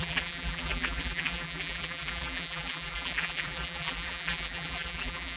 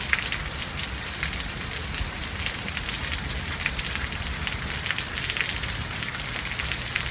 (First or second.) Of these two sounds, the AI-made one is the first